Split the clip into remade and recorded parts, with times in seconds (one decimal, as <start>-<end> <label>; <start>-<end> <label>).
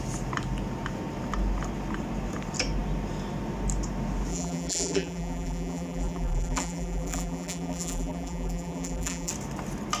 0.0-4.3 recorded; 4.3-9.3 remade; 9.3-10.0 recorded